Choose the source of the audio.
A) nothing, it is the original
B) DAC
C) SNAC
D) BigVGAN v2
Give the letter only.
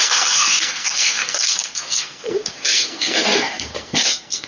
C